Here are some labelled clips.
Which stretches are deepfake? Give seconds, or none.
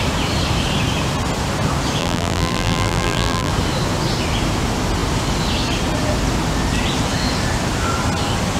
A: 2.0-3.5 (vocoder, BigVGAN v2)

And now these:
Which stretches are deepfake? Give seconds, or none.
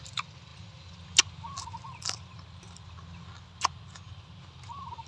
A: none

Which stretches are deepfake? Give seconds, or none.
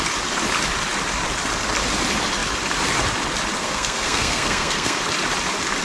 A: 3.6-5.0 (codec, SNAC)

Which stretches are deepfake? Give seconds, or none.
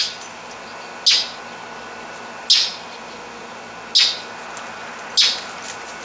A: none